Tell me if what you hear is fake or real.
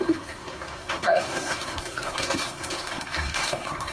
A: fake